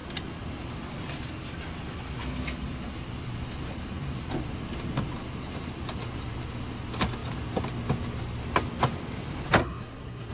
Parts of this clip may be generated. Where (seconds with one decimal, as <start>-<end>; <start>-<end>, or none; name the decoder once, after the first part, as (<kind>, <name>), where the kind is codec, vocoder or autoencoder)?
9.6-10.3 (codec, SNAC)